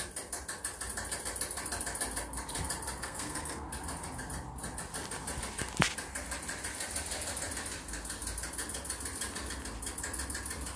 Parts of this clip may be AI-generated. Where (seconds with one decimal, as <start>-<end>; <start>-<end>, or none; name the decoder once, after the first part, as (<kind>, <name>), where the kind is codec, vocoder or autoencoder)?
3.0-3.7 (codec, SNAC)